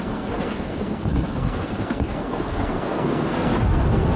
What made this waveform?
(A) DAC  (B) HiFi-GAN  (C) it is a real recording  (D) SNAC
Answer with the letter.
D